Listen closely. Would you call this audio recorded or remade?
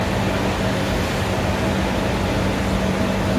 recorded